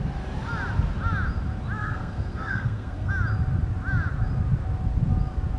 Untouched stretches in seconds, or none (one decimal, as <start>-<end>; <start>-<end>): 0.0-1.8; 3.1-5.6

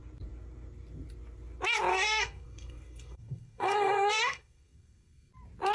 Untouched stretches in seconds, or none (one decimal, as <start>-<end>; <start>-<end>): 0.0-1.9; 5.3-5.7

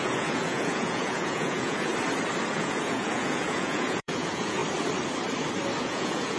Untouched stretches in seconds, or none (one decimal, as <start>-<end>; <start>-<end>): 1.9-2.5; 4.6-5.8